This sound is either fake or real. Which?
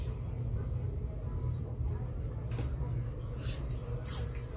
real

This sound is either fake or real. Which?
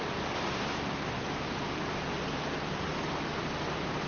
real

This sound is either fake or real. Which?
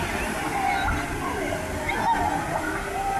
real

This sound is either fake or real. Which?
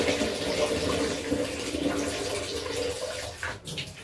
real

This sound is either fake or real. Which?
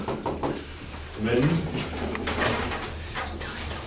fake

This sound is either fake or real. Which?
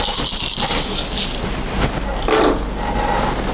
real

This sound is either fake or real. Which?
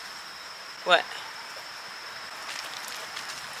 real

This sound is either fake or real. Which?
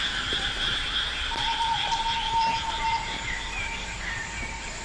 fake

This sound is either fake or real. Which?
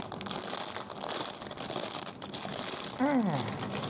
real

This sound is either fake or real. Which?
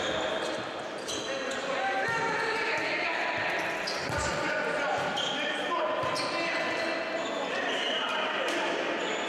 real